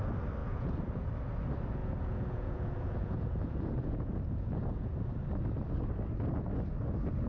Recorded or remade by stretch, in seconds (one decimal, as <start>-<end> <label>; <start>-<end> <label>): 0.0-0.4 recorded; 0.4-1.1 remade; 1.1-1.8 recorded; 1.8-5.1 remade; 5.1-7.3 recorded